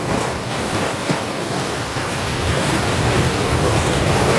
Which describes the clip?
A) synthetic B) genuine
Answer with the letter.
A